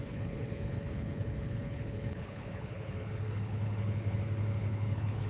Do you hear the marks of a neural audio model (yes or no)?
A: yes